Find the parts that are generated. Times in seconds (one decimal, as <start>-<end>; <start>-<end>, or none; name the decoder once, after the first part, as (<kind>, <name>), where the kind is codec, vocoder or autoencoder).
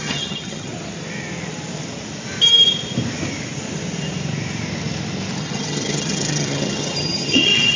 0.0-0.7 (vocoder, HiFi-GAN); 5.4-7.8